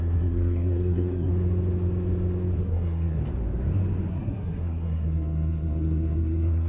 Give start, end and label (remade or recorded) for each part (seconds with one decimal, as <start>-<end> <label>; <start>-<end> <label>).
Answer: 0.0-1.3 remade; 1.3-2.6 recorded; 2.6-3.2 remade; 3.2-4.1 recorded; 4.1-6.7 remade